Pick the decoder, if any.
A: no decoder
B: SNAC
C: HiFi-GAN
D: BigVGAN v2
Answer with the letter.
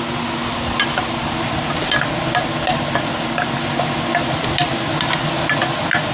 A